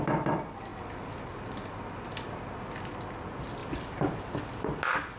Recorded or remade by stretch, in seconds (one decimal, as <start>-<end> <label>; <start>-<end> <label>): 0.0-5.2 recorded